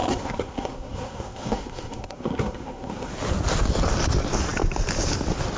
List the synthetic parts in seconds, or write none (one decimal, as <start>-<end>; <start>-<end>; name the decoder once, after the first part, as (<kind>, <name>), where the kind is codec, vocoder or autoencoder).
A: 0.0-3.1 (codec, SNAC)